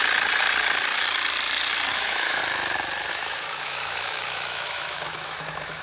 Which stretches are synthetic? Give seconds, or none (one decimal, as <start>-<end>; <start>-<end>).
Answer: 1.9-2.4; 3.1-5.8